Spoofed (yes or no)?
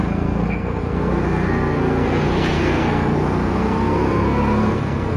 yes